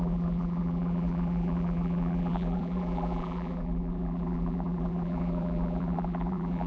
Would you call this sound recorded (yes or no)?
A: no